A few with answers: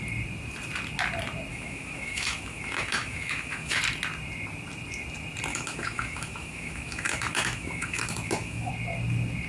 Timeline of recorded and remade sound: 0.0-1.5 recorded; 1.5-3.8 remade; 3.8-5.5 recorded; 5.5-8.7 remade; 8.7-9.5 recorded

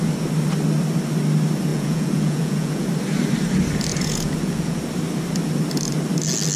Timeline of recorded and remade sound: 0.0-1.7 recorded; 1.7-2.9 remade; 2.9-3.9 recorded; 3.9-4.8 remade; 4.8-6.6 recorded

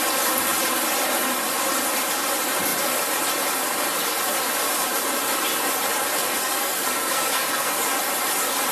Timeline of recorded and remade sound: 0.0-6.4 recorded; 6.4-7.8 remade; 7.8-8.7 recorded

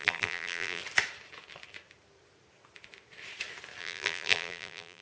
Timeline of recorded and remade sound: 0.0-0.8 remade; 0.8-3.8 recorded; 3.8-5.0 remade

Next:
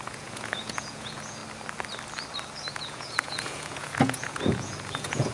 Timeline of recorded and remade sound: 0.0-1.4 remade; 1.4-2.7 recorded; 2.7-5.3 remade

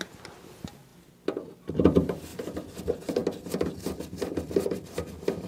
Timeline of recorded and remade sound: 0.0-5.5 recorded